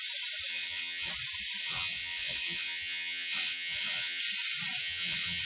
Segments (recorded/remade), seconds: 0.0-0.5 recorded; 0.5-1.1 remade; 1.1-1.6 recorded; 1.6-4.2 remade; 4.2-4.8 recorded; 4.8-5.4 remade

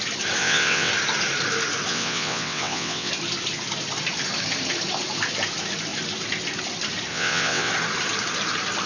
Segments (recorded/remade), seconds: 0.0-0.4 recorded; 0.4-0.9 remade; 0.9-1.9 recorded; 1.9-3.1 remade; 3.1-7.1 recorded; 7.1-7.7 remade; 7.7-8.9 recorded

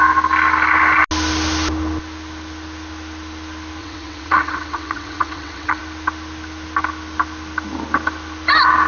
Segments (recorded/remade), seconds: 0.0-3.8 recorded; 3.8-5.8 remade; 5.8-8.9 recorded

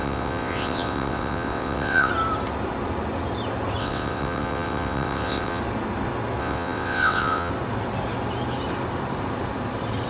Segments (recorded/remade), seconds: 0.0-2.1 remade; 2.1-3.8 recorded; 3.8-5.6 remade; 5.6-6.4 recorded; 6.4-7.5 remade; 7.5-10.1 recorded

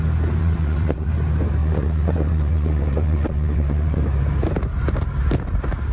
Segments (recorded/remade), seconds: 0.0-0.4 recorded; 0.4-1.1 remade; 1.1-1.6 recorded; 1.6-4.0 remade; 4.0-5.9 recorded

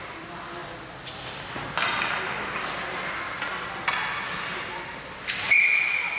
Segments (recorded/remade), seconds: 0.0-6.2 recorded

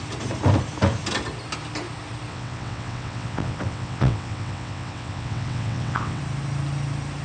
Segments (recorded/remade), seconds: 0.0-2.3 recorded; 2.3-6.2 remade; 6.2-7.2 recorded

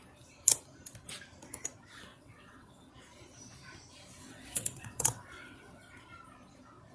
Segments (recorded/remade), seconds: 0.0-2.1 recorded; 2.1-2.9 remade; 2.9-4.2 recorded; 4.2-5.8 remade; 5.8-6.9 recorded